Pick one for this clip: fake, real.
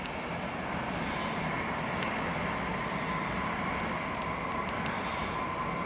real